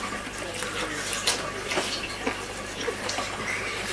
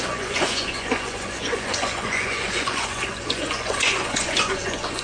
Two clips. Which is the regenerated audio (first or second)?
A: second